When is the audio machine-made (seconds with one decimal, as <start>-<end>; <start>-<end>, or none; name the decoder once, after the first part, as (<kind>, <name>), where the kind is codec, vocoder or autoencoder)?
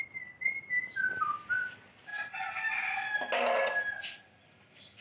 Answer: none